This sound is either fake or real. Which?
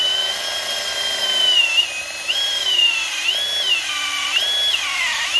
real